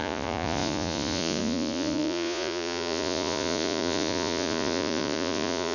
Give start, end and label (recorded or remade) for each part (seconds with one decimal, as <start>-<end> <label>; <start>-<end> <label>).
0.0-5.7 remade